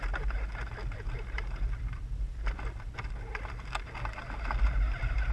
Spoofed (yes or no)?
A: no